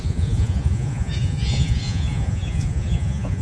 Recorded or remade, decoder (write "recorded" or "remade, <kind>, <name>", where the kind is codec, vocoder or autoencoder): remade, vocoder, Vocos